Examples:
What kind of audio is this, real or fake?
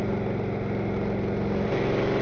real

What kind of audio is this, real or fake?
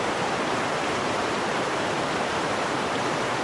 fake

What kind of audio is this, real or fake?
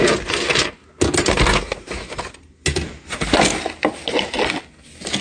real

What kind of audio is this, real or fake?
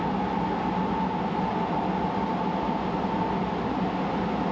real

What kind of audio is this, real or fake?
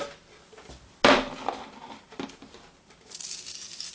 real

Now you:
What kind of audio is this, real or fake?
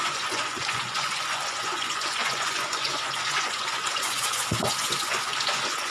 fake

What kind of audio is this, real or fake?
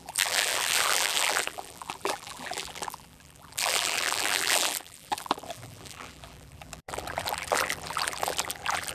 fake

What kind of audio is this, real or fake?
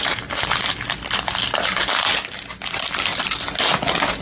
real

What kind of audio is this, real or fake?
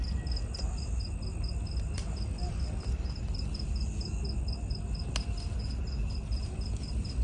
real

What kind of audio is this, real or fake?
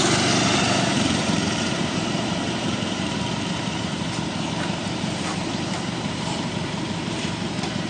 fake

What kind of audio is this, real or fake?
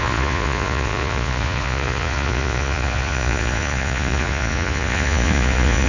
fake